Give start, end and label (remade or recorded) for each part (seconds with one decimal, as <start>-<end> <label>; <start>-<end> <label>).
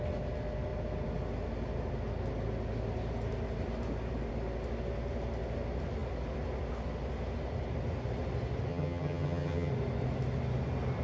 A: 0.0-8.7 recorded; 8.7-9.7 remade; 9.7-11.0 recorded